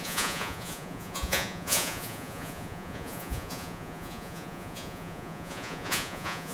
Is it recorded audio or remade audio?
remade